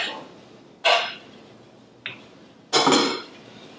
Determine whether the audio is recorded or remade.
recorded